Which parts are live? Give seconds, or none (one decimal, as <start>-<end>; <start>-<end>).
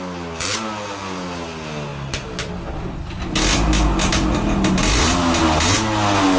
0.0-6.4